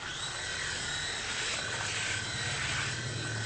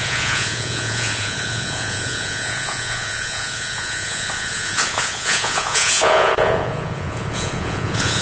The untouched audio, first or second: first